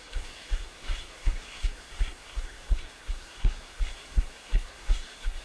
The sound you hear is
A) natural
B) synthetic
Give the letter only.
B